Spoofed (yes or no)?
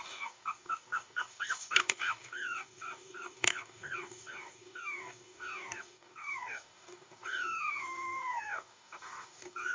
yes